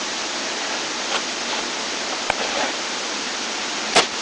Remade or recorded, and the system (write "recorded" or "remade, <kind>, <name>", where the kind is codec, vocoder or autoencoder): recorded